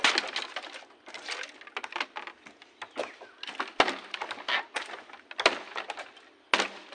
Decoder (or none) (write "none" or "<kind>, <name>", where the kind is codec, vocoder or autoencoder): none